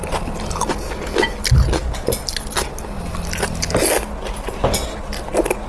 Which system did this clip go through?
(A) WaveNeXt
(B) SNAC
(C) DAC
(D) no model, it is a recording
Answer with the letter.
D